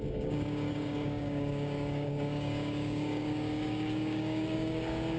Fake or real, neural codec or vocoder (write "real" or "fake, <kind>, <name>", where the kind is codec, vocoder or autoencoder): fake, codec, DAC